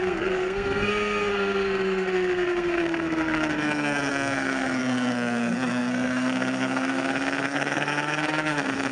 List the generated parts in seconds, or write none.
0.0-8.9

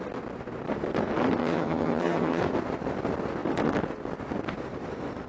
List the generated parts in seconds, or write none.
1.4-2.4